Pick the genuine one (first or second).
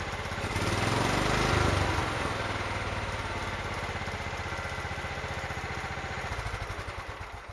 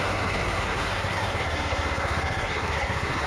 first